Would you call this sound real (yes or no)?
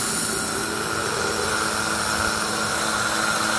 yes